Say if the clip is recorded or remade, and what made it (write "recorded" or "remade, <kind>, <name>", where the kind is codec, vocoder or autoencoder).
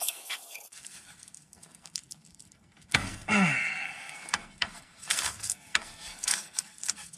remade, codec, SNAC